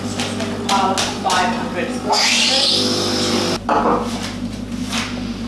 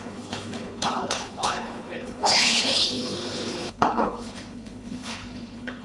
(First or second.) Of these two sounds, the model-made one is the second